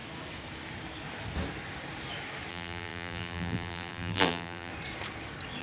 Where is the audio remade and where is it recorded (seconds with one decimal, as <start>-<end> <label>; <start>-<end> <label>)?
0.0-2.5 recorded; 2.5-4.7 remade; 4.7-5.6 recorded